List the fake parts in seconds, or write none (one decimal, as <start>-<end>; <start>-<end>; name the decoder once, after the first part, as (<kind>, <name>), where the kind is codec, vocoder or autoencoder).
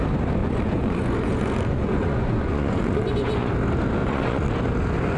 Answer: 0.4-3.5 (vocoder, Vocos); 4.0-4.5